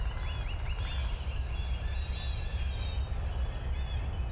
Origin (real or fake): real